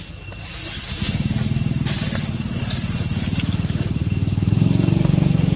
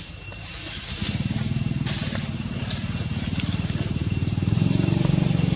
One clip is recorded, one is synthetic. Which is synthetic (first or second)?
second